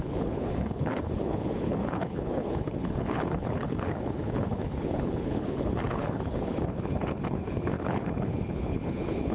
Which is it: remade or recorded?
remade